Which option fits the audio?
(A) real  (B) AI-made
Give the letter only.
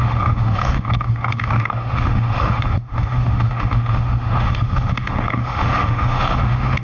B